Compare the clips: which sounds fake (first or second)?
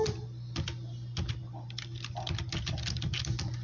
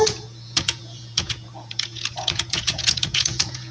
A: second